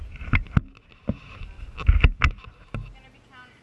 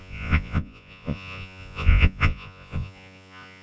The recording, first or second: first